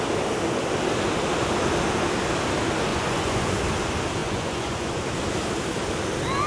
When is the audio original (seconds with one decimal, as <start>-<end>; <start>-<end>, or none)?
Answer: 0.0-2.9; 3.6-4.2; 5.0-6.5